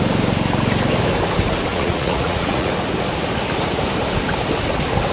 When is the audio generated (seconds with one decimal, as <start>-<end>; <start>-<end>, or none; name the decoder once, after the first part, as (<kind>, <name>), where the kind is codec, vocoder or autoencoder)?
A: 1.7-2.7 (vocoder, Vocos)